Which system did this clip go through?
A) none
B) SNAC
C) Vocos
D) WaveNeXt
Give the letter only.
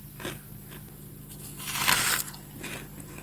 A